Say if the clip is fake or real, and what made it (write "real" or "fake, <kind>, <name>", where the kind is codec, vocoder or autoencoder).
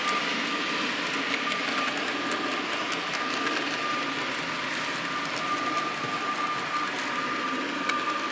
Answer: real